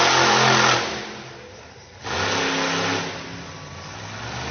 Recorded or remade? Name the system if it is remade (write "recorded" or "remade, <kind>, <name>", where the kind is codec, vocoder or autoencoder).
recorded